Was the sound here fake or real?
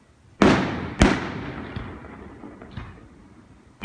real